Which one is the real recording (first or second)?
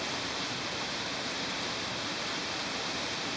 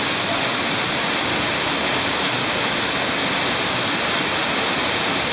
second